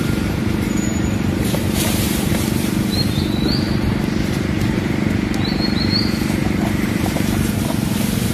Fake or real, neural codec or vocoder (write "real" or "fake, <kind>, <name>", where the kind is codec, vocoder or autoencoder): fake, vocoder, BigVGAN v2